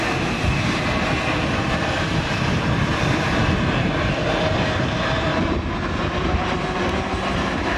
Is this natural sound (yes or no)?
no